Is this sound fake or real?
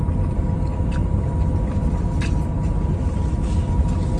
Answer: real